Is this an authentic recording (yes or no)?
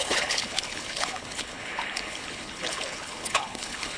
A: no